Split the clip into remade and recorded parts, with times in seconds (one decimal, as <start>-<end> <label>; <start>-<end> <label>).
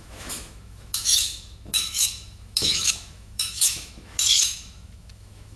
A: 0.0-5.6 remade